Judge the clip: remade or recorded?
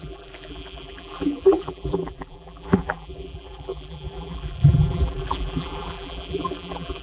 remade